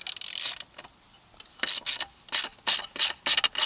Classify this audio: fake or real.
real